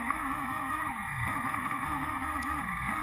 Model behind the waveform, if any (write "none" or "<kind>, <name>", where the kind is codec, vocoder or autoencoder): codec, SNAC